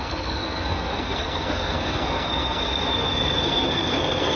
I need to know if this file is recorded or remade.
remade